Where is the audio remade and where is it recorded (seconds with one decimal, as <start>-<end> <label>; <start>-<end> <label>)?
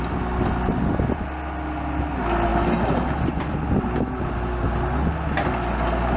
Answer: 0.0-6.2 recorded